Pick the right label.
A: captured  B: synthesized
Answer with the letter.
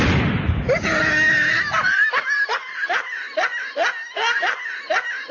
A